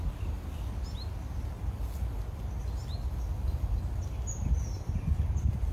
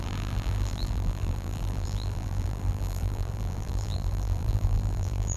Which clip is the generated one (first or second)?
second